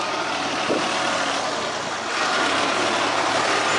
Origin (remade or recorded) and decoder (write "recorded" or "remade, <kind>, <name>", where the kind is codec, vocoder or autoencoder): recorded